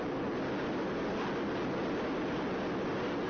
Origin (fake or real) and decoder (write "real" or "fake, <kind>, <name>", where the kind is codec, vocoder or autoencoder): real